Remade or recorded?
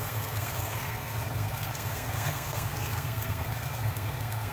remade